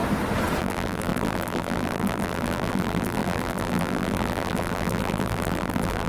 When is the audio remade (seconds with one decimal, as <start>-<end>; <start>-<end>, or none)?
0.6-6.1